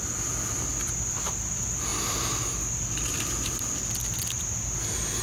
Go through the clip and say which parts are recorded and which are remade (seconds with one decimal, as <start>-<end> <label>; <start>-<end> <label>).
0.0-5.2 recorded